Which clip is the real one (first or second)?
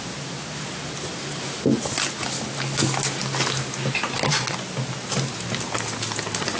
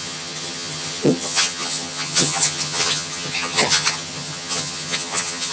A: first